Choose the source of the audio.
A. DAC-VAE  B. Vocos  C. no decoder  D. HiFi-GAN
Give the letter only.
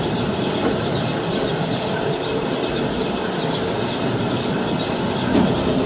C